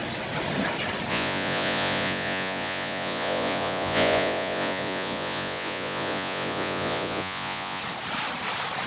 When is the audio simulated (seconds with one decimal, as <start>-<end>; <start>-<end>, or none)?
1.1-7.8